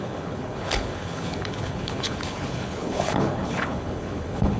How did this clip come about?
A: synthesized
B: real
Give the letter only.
A